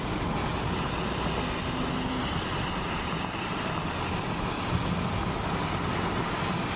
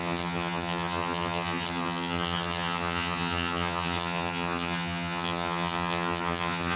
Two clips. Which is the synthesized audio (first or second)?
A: second